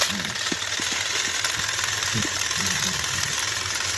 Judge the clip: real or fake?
real